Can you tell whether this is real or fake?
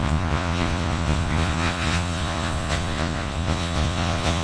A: fake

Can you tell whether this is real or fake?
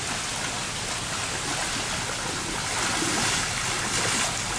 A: real